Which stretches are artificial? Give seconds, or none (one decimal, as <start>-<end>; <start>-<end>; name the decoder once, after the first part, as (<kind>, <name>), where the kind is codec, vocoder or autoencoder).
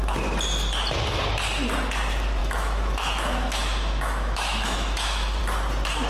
2.4-5.4 (autoencoder, DAC-VAE)